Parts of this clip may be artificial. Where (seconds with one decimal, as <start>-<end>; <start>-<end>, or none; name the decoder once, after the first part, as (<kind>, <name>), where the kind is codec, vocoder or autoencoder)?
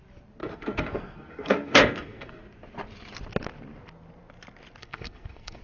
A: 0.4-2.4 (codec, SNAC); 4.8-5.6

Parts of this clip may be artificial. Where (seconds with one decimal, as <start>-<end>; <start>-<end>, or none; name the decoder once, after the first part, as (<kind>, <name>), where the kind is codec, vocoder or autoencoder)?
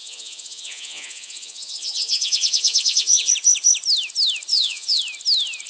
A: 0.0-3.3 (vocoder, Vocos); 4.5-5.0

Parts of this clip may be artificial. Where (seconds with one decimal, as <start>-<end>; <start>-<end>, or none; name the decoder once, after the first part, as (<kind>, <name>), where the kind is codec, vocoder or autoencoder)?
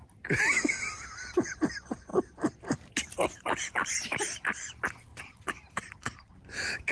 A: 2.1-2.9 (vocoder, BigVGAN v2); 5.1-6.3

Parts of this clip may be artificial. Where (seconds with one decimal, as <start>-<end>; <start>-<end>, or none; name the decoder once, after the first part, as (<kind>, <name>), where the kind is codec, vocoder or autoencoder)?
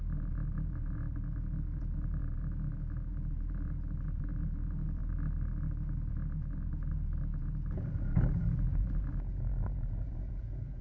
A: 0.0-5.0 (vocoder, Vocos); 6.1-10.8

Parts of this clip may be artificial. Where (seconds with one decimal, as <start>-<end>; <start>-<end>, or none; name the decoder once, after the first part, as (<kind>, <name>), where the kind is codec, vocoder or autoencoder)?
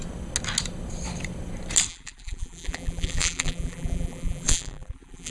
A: 1.9-5.3 (vocoder, BigVGAN v2)